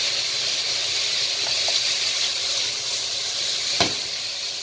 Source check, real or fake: real